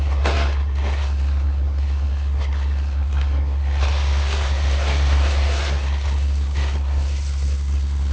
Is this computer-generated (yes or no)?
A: yes